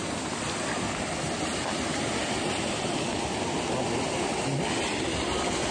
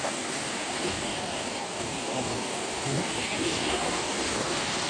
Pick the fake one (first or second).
second